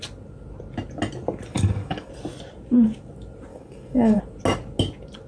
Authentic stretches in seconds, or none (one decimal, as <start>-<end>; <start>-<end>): 0.0-1.5; 2.1-3.5; 4.2-5.3